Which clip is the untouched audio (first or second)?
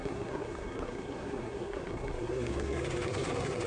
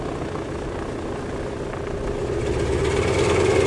second